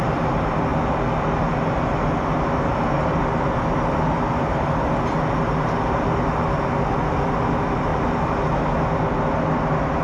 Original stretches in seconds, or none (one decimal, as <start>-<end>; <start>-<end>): 0.0-10.0